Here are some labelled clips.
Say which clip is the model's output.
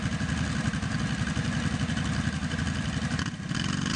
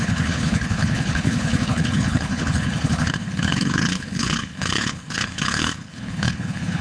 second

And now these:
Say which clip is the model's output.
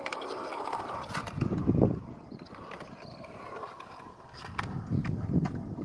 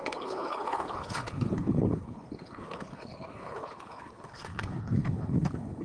second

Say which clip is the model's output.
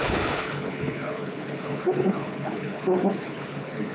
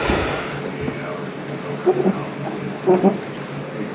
first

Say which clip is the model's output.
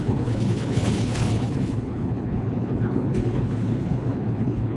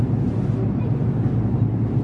first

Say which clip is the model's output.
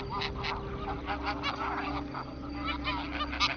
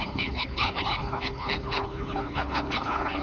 second